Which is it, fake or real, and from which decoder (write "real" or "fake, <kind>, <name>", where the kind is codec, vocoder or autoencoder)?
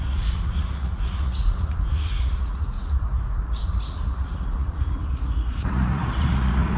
fake, vocoder, Vocos